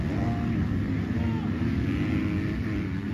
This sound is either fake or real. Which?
real